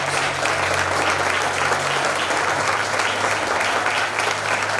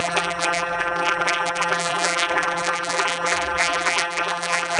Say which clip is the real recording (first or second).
first